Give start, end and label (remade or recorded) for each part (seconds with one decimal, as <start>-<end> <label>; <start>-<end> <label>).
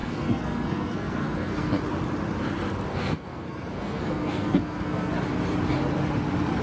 0.0-1.7 remade; 1.7-2.9 recorded; 2.9-5.1 remade; 5.1-6.6 recorded